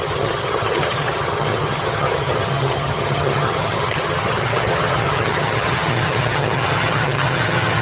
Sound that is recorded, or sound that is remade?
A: remade